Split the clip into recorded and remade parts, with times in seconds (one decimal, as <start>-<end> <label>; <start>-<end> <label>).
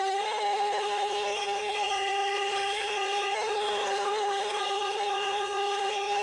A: 0.0-6.2 remade